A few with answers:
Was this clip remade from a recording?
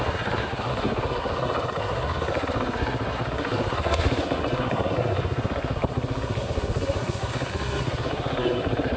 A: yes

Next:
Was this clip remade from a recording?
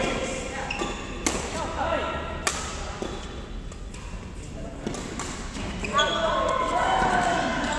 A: no